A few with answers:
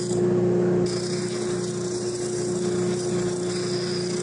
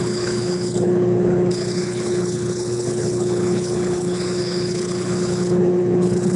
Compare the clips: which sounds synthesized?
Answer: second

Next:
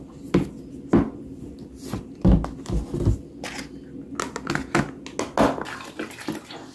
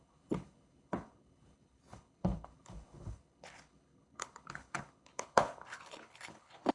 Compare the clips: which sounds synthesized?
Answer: second